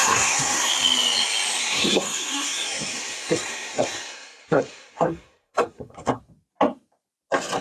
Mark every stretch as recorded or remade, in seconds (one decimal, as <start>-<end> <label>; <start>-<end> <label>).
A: 0.0-0.7 remade; 0.7-1.6 recorded; 1.6-6.2 remade; 6.2-7.6 recorded